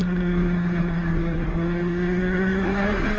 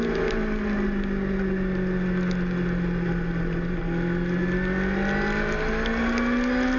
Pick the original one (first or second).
second